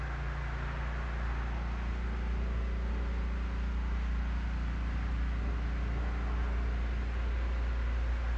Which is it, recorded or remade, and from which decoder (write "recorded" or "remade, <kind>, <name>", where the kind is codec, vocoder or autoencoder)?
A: recorded